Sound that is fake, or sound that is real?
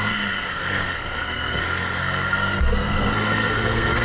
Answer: fake